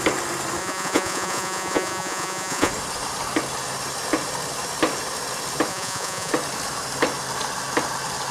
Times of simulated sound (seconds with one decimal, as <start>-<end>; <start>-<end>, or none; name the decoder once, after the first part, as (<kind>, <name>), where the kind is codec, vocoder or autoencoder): 0.6-2.7 (vocoder, Vocos); 5.7-6.3